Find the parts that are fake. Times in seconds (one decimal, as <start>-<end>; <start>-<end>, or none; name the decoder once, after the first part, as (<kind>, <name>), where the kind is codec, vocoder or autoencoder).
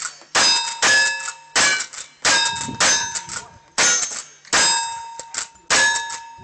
none